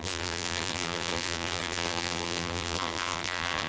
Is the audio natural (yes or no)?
no